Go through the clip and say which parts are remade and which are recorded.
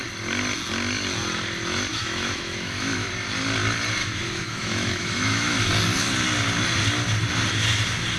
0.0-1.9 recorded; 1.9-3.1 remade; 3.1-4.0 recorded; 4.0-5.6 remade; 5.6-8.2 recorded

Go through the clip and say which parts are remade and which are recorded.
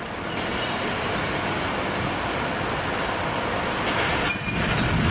0.0-5.1 recorded